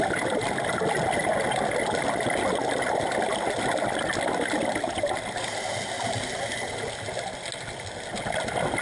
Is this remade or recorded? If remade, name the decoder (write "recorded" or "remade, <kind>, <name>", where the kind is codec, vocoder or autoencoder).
recorded